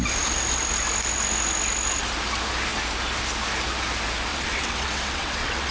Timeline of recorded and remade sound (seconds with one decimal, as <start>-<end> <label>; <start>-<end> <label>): 0.0-4.3 recorded; 4.3-5.7 remade